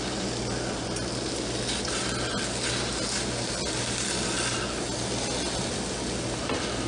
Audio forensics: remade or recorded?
recorded